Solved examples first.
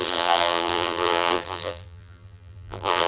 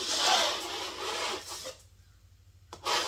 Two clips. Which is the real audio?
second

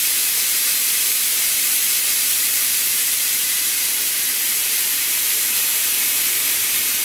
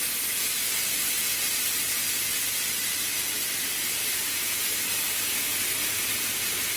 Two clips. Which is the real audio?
second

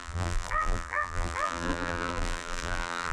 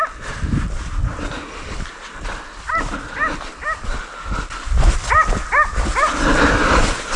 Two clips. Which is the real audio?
second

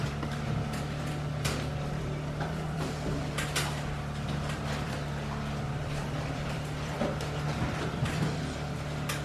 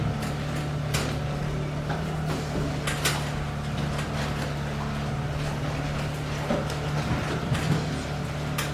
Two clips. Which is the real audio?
second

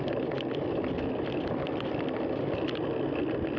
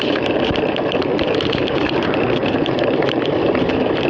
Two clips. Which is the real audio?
first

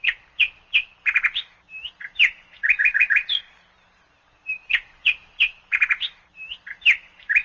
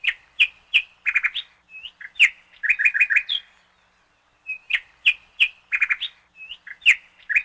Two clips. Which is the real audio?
second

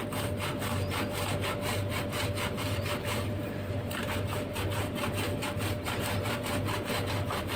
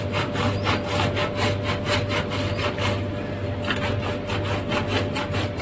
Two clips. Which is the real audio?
second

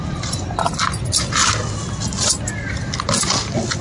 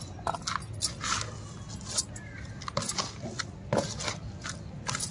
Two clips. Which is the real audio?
second